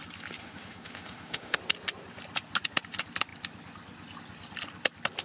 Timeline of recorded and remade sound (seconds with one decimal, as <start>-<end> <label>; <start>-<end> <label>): 0.0-0.4 recorded; 0.4-1.6 remade; 1.6-5.2 recorded